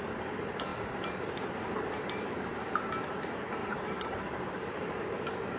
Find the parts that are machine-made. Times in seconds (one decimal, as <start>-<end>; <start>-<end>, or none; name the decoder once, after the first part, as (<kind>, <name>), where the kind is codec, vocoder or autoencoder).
3.6-5.0 (vocoder, BigVGAN v2)